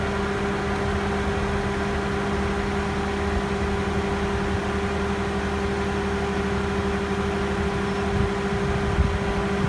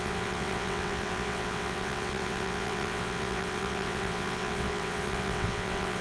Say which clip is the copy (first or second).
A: second